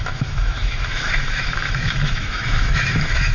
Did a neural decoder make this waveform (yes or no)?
yes